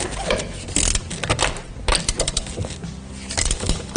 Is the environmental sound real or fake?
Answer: real